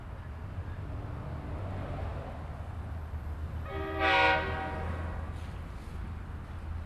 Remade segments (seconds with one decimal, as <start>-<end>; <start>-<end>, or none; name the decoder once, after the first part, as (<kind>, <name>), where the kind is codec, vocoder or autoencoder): none